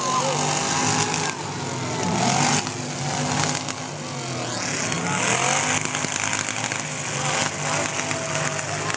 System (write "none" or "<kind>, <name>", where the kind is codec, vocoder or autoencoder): none